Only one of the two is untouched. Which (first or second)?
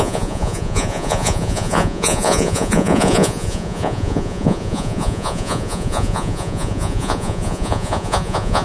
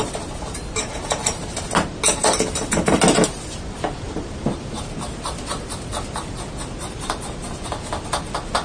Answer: second